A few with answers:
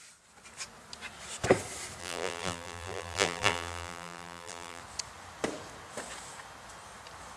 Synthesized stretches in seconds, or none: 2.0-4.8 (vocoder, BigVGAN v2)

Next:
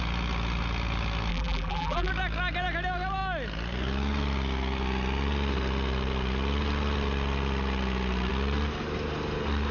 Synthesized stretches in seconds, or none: 1.3-2.1 (vocoder, BigVGAN v2)

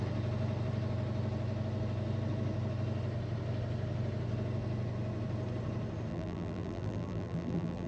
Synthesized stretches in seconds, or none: 6.1-7.9 (vocoder, BigVGAN v2)